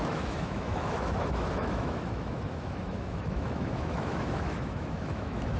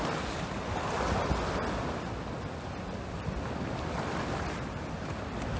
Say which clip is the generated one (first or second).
first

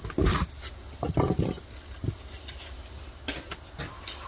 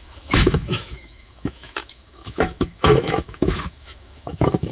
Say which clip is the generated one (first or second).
second